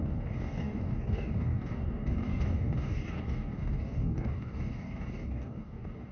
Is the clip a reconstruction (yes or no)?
yes